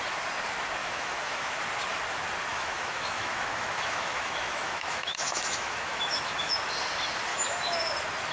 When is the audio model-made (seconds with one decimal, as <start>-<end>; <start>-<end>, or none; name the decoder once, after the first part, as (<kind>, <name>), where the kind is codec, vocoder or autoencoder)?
0.8-1.6 (autoencoder, DAC-VAE); 2.5-6.5; 7.3-7.9